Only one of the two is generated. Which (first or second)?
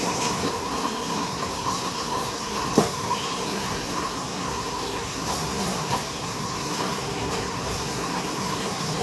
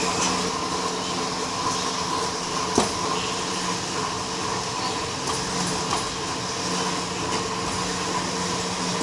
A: first